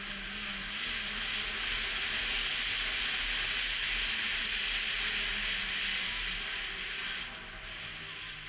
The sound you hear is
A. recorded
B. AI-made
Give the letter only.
A